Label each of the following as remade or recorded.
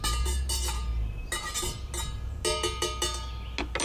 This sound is recorded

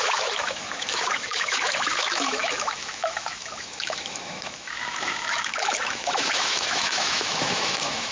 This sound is remade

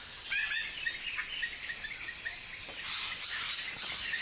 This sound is recorded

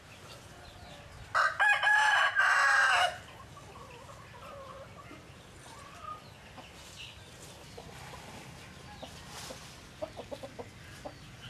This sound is recorded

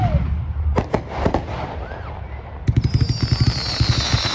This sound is recorded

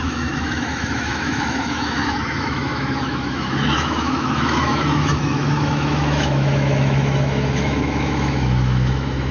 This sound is remade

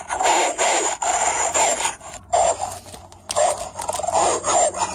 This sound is recorded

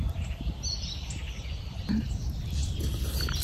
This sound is remade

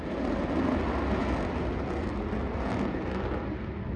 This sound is recorded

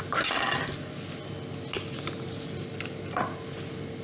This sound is recorded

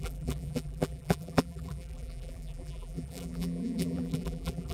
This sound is remade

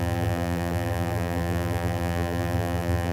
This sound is remade